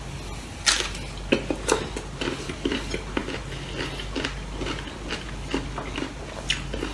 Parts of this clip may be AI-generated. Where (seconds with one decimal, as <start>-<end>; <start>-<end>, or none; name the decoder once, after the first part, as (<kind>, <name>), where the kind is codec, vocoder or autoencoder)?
none